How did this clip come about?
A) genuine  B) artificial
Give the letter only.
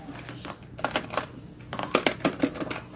A